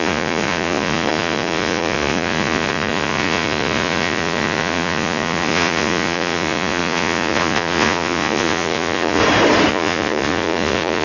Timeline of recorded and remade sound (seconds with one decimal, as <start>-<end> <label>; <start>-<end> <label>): 0.0-9.2 remade; 9.2-9.7 recorded; 9.7-11.0 remade